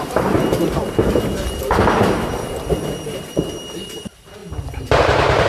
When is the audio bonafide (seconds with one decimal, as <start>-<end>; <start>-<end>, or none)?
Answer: 4.4-5.0